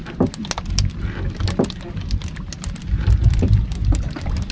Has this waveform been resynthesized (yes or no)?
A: no